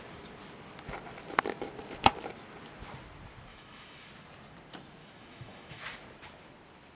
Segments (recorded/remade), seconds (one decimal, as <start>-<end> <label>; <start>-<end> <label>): 0.0-3.5 recorded; 3.5-4.1 remade; 4.1-5.0 recorded; 5.0-5.8 remade; 5.8-6.9 recorded